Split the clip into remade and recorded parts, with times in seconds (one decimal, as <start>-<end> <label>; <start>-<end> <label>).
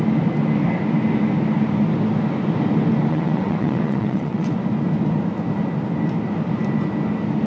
0.0-3.1 recorded; 3.1-4.5 remade; 4.5-7.5 recorded